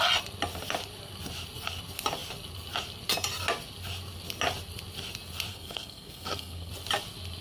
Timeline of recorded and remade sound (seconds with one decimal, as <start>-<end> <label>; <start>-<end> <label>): 0.0-5.5 recorded; 5.5-6.7 remade; 6.7-7.4 recorded